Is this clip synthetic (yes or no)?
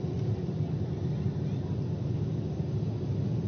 no